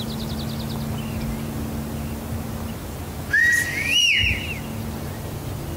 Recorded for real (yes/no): yes